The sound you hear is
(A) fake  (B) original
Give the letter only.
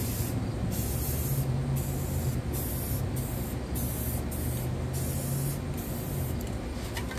B